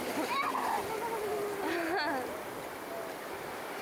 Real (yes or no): yes